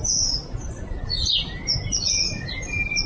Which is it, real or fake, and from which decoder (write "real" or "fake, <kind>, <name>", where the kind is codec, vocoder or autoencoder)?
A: real